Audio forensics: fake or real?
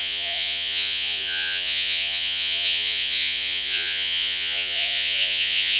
fake